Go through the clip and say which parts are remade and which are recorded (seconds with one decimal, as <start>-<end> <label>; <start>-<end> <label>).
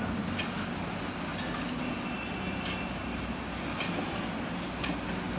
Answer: 0.0-5.4 recorded